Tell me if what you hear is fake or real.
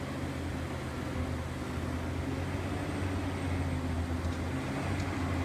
real